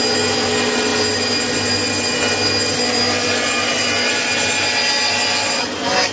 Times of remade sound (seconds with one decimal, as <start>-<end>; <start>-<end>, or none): none